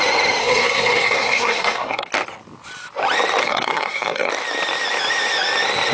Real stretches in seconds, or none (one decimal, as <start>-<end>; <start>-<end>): 0.0-0.4; 2.1-3.4; 4.3-5.9